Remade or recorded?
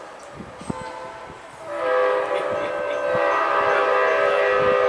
recorded